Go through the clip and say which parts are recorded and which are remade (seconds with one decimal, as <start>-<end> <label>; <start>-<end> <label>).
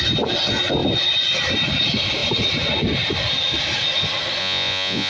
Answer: 0.0-4.4 recorded; 4.4-5.1 remade